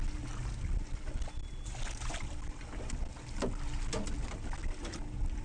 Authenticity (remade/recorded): recorded